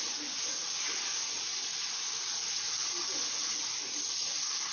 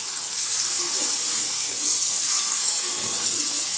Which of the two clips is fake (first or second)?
second